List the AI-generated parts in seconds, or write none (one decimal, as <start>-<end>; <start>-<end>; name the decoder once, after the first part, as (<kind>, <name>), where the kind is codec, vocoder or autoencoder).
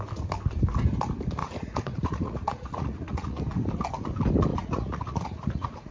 1.4-3.4 (vocoder, Vocos); 4.5-5.9